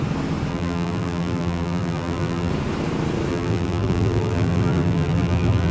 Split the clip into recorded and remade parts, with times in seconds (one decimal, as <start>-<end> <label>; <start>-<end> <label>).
0.0-0.5 recorded; 0.5-2.5 remade; 2.5-3.3 recorded; 3.3-5.7 remade